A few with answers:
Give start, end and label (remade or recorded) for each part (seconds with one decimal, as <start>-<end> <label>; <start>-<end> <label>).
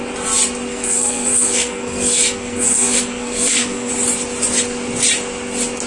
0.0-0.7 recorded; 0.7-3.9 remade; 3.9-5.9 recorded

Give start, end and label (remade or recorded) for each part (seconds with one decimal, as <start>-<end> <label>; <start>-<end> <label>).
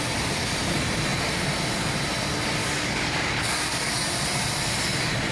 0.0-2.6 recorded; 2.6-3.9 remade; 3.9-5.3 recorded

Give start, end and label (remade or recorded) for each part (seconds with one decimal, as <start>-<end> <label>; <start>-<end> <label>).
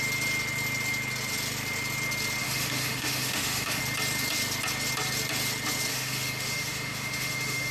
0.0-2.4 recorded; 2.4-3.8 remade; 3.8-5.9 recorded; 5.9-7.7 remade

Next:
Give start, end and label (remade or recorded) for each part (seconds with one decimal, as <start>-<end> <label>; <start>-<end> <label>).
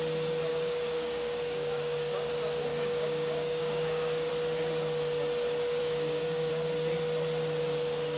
0.0-0.5 recorded; 0.5-2.3 remade; 2.3-2.7 recorded; 2.7-4.3 remade; 4.3-5.8 recorded; 5.8-6.5 remade; 6.5-8.2 recorded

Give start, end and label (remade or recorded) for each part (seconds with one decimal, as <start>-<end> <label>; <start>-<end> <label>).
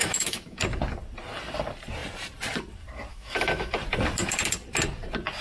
0.0-0.6 remade; 0.6-3.1 recorded; 3.1-3.7 remade; 3.7-5.4 recorded